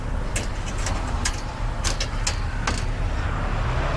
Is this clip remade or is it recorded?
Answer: recorded